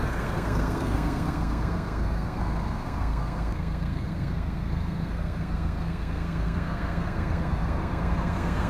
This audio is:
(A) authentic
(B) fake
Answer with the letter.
B